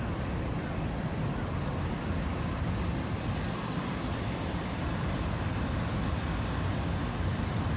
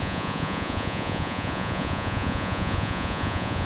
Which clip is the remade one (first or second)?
second